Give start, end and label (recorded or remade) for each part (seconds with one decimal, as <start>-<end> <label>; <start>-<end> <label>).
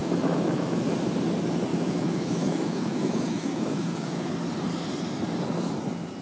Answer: 0.0-0.9 remade; 0.9-1.7 recorded; 1.7-4.3 remade; 4.3-6.2 recorded